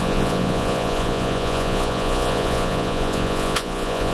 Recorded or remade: remade